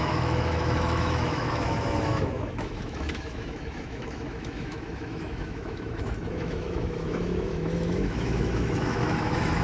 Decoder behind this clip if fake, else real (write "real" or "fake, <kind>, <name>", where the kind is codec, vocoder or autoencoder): fake, autoencoder, DAC-VAE